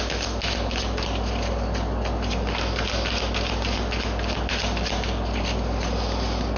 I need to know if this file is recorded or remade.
recorded